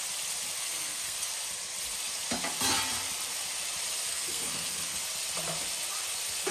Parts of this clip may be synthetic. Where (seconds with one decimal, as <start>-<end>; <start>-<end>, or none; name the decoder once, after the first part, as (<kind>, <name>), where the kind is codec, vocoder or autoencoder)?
0.6-1.3 (codec, SNAC); 4.1-5.0